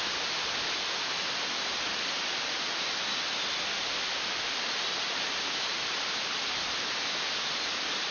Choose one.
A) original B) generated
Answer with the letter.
A